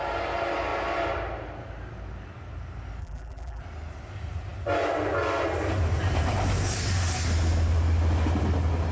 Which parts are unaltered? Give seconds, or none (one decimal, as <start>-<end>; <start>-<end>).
0.0-3.0; 3.6-8.9